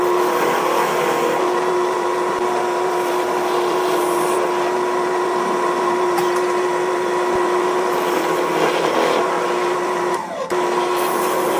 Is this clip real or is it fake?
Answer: fake